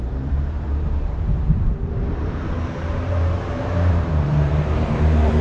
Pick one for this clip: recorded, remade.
remade